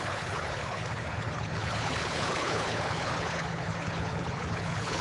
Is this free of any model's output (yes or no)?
no